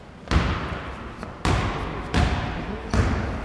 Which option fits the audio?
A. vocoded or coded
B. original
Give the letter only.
B